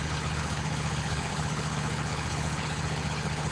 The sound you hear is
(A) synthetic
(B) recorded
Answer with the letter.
A